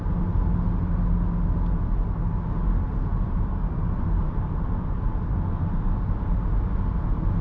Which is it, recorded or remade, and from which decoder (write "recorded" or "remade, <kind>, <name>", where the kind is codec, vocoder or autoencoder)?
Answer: recorded